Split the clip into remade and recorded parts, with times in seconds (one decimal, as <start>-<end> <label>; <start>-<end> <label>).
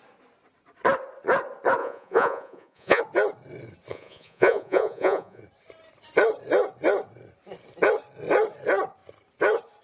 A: 0.0-1.8 recorded; 1.8-3.0 remade; 3.0-3.9 recorded; 3.9-5.4 remade; 5.4-9.8 recorded